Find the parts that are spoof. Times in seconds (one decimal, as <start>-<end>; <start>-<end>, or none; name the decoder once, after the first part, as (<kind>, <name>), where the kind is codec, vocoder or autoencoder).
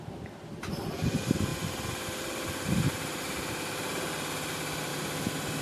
none